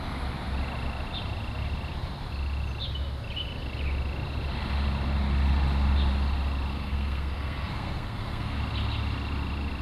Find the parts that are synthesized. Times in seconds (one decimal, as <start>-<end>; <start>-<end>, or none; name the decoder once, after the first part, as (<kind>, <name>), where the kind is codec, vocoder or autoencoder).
6.7-8.6 (codec, SNAC)